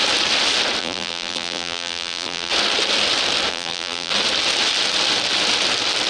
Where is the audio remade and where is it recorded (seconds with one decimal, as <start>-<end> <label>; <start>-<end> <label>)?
0.0-0.8 recorded; 0.8-2.5 remade; 2.5-3.5 recorded; 3.5-4.1 remade; 4.1-6.1 recorded